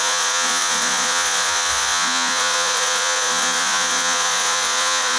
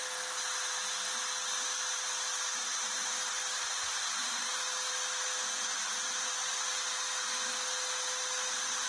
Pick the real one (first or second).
second